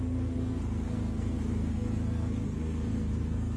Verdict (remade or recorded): remade